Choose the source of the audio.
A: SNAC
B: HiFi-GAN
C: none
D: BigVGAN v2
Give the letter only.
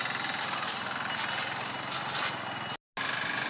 C